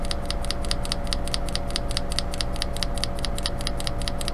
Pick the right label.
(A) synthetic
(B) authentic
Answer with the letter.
B